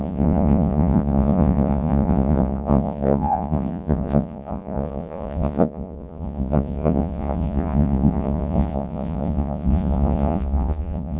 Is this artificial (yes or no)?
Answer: yes